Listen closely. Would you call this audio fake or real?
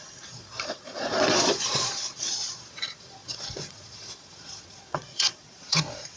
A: fake